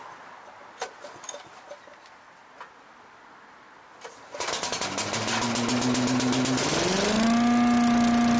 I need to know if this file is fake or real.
real